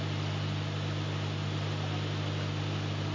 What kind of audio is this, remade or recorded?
recorded